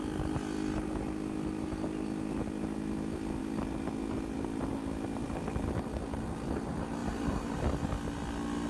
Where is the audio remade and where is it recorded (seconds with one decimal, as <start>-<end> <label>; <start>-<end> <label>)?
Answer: 0.0-5.2 recorded; 5.2-5.8 remade; 5.8-7.0 recorded; 7.0-7.6 remade; 7.6-8.7 recorded